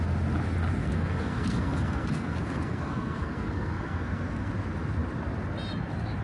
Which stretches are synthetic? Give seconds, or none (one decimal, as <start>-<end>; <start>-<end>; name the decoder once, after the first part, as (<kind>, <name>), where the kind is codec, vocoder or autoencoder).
0.8-4.5 (codec, SNAC)

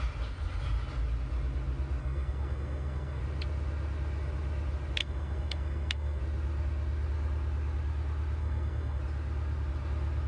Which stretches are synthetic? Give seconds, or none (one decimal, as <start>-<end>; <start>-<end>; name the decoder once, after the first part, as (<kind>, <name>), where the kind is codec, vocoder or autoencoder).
2.0-3.2 (codec, SNAC); 5.0-6.2; 8.4-9.0

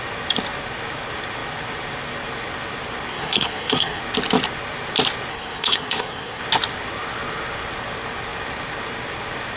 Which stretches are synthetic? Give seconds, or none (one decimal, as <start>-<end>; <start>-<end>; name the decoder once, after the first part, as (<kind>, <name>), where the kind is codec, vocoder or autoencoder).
3.1-4.0 (codec, SNAC); 5.3-6.4

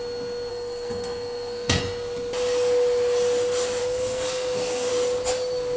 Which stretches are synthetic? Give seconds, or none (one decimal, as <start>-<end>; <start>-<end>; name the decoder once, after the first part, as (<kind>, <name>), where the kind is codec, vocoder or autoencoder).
0.5-1.8 (codec, SNAC); 3.8-4.9

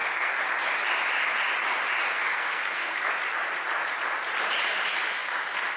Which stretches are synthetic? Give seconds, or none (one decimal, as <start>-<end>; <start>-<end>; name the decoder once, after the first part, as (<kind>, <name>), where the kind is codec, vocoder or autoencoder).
0.0-0.5 (codec, SNAC); 2.1-3.1

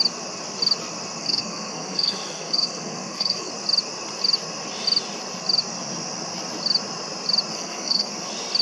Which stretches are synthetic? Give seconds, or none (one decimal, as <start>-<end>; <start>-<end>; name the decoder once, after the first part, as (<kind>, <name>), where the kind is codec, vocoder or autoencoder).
1.2-3.5 (codec, SNAC); 7.5-8.1

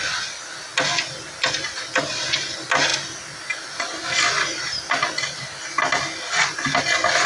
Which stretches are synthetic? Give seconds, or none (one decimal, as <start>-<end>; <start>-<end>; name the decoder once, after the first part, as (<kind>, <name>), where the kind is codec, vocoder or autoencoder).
none